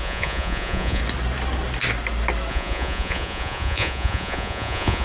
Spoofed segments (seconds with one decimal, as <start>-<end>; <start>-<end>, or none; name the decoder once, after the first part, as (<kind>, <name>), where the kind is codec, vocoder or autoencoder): 0.0-1.0 (vocoder, Vocos); 2.5-5.0